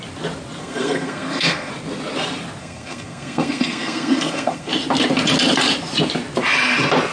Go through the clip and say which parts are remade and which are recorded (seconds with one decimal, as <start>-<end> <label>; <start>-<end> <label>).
0.0-0.6 recorded; 0.6-1.7 remade; 1.7-2.6 recorded; 2.6-4.7 remade; 4.7-7.1 recorded